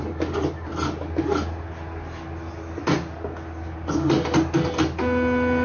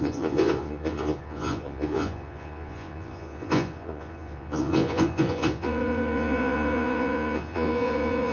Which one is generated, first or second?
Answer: second